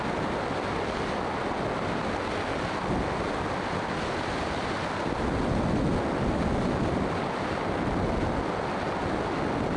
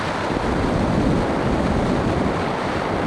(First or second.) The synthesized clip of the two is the second